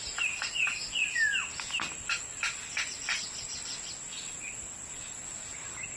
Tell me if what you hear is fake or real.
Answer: real